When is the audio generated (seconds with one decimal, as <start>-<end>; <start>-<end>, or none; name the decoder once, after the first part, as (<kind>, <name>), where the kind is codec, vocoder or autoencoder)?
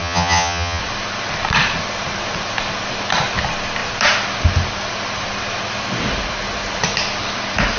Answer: 0.0-0.8 (vocoder, HiFi-GAN)